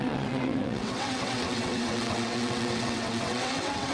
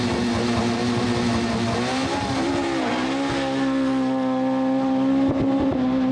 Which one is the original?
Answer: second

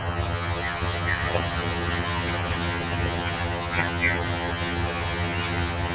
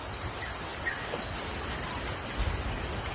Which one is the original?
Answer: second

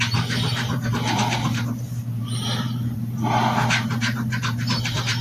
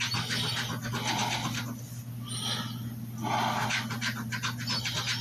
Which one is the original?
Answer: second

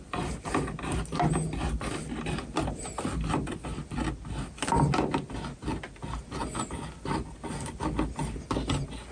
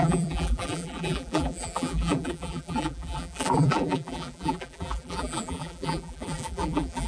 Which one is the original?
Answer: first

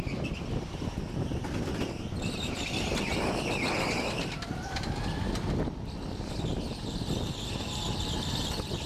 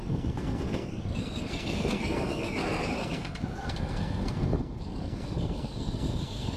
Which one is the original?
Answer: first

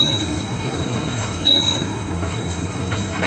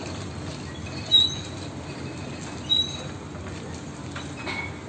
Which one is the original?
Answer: second